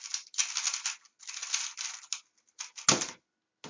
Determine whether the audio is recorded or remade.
recorded